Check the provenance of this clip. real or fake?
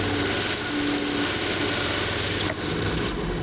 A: real